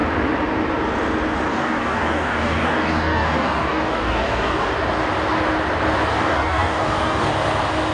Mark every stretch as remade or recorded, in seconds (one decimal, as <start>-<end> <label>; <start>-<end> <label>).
0.0-1.5 recorded; 1.5-4.7 remade; 4.7-6.1 recorded; 6.1-7.3 remade; 7.3-7.9 recorded